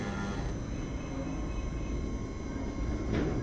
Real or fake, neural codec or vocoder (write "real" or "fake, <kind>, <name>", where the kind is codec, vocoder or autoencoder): real